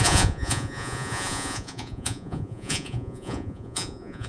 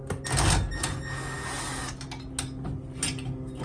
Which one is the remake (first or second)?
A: first